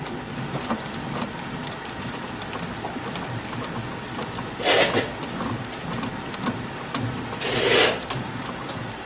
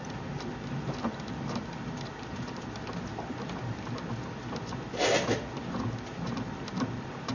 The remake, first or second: first